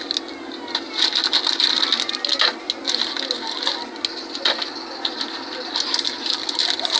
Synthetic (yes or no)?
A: no